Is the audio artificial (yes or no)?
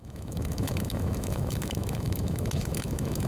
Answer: yes